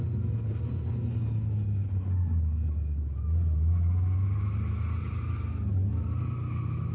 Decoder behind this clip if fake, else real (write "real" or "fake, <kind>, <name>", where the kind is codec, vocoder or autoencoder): real